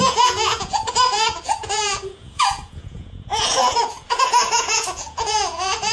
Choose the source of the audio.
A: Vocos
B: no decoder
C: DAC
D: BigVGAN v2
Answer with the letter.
A